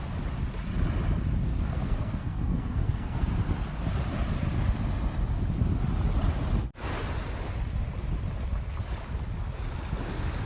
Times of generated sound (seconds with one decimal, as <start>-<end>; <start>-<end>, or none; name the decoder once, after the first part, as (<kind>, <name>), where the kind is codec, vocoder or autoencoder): 1.4-3.3 (codec, SNAC)